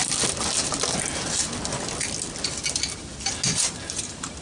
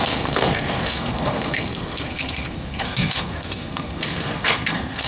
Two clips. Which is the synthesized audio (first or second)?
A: second